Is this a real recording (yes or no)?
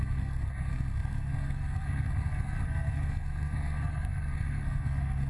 no